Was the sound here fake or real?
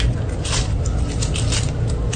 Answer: real